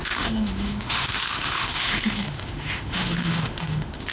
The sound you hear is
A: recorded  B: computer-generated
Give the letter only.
B